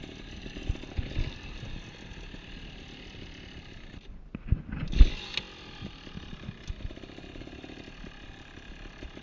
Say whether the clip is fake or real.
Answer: real